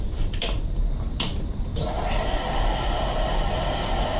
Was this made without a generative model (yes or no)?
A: no